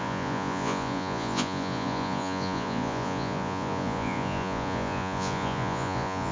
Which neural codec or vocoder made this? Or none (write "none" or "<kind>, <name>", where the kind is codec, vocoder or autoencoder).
vocoder, Vocos